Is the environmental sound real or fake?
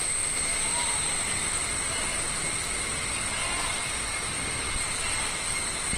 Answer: real